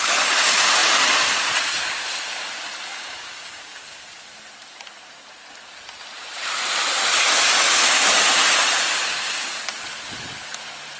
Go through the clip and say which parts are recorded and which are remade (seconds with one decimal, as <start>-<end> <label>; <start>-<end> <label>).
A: 0.0-2.9 recorded; 2.9-4.1 remade; 4.1-11.0 recorded